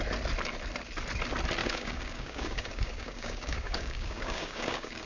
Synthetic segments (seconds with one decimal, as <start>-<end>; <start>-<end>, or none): 1.6-5.1